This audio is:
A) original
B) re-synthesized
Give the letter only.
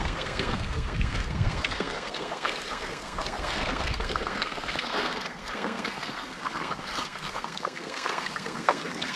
B